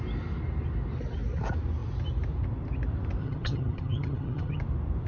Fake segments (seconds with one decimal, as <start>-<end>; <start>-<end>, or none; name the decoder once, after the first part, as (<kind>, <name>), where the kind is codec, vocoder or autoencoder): 3.2-4.6 (vocoder, HiFi-GAN)